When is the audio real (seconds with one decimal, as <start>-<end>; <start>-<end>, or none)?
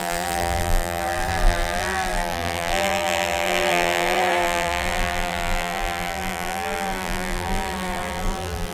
none